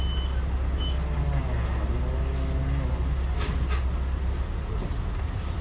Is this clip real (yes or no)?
yes